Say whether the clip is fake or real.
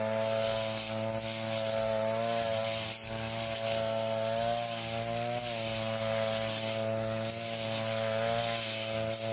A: real